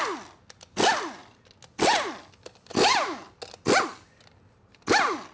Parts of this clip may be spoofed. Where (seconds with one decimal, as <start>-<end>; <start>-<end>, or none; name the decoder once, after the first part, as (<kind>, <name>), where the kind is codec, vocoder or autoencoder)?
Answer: none